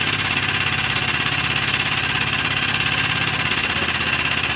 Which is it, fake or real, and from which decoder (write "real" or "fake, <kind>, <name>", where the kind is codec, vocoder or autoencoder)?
real